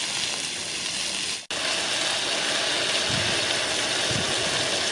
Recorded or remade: recorded